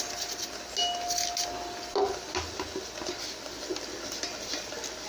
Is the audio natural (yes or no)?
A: yes